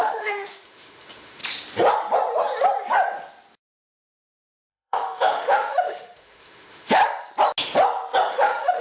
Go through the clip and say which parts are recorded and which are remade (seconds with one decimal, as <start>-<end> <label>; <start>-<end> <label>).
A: 0.0-1.4 remade; 1.4-4.7 recorded; 4.7-7.0 remade; 7.0-8.3 recorded; 8.3-8.8 remade